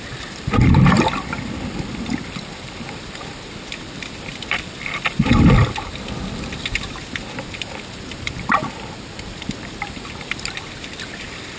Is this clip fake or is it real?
fake